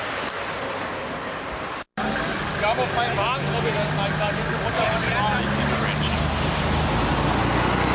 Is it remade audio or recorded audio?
recorded